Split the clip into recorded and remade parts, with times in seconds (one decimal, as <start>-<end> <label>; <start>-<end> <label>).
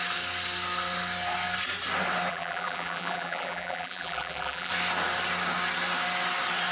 0.0-2.3 recorded; 2.3-4.7 remade; 4.7-6.7 recorded